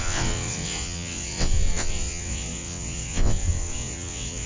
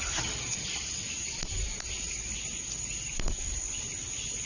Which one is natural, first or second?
second